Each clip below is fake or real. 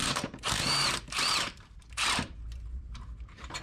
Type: fake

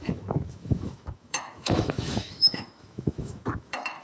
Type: fake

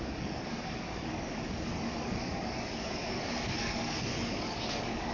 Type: fake